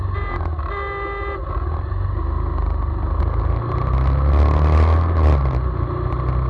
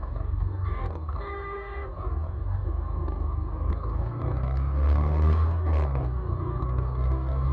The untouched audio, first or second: first